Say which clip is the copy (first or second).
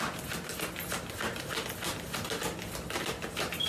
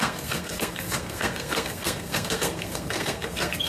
second